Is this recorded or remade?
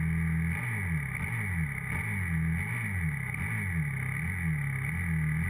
recorded